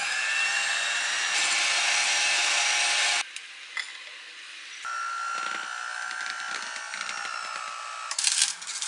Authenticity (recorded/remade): recorded